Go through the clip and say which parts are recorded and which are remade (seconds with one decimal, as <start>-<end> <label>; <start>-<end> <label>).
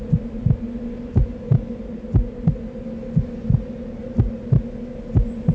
0.0-5.5 recorded